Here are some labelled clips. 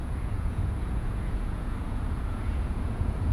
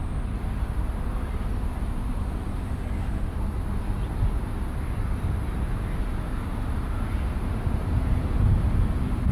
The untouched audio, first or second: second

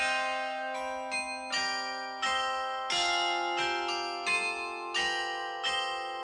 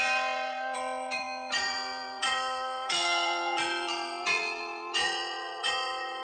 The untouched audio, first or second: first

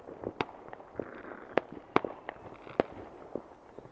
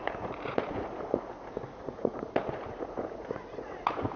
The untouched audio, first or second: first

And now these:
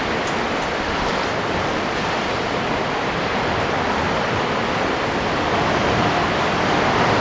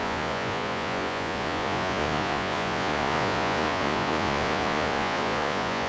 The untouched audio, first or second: first